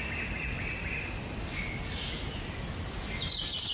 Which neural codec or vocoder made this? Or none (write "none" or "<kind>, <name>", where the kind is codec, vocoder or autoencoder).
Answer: none